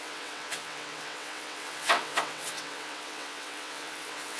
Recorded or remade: remade